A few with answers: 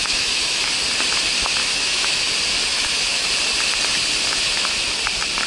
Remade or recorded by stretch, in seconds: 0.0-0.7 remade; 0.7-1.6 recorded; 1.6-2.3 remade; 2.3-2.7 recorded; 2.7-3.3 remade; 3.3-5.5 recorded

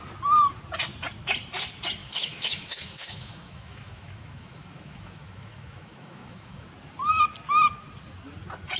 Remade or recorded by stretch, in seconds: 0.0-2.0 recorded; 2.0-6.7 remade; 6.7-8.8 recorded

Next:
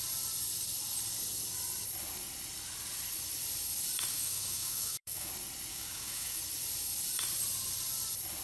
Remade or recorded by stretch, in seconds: 0.0-4.1 recorded; 4.1-5.3 remade; 5.3-5.7 recorded; 5.7-6.4 remade; 6.4-8.4 recorded